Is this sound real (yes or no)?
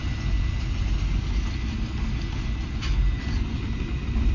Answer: yes